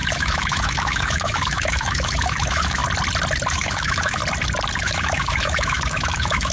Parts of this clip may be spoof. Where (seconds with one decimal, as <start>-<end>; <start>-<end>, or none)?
0.0-2.8; 3.5-4.2; 4.8-6.5